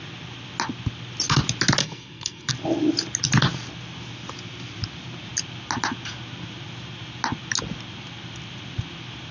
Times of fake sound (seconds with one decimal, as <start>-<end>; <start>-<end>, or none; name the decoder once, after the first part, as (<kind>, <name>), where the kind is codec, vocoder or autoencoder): 1.8-2.5 (codec, SNAC)